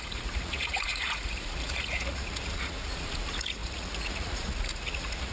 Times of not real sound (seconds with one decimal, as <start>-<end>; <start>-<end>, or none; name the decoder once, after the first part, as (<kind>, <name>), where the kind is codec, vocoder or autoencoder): 0.0-5.3 (vocoder, Vocos)